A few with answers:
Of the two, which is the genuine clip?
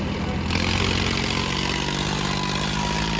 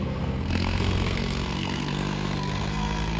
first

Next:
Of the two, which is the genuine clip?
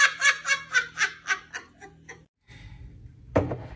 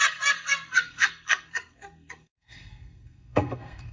first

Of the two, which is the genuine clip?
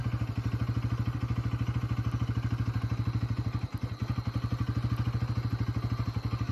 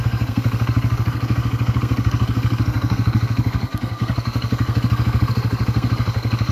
first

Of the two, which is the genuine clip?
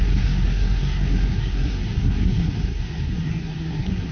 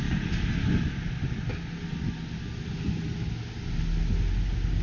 second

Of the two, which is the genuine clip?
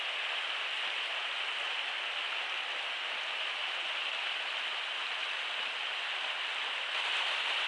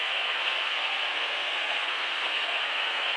first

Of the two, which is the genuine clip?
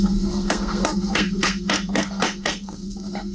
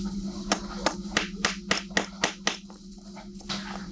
second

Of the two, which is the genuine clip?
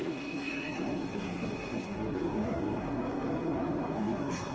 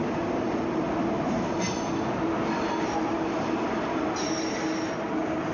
second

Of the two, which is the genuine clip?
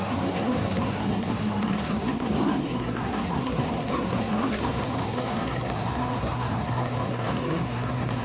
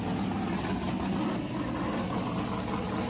second